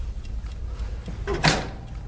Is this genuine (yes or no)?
yes